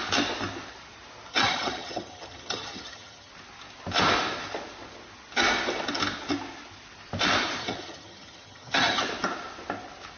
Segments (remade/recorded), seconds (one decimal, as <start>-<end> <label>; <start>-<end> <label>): 0.0-1.3 recorded; 1.3-3.3 remade; 3.3-7.6 recorded; 7.6-9.0 remade; 9.0-10.2 recorded